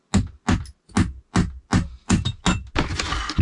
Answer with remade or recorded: recorded